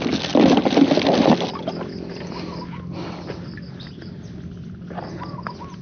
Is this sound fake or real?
real